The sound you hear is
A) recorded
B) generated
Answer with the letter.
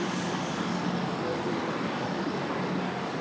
B